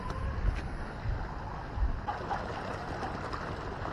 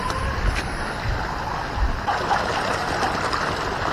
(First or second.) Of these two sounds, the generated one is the second